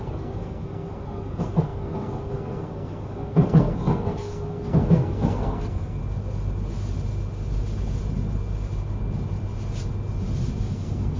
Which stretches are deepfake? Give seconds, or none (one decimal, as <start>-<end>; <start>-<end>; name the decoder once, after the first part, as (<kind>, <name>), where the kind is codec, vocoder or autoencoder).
0.0-6.0 (codec, SNAC); 10.6-11.2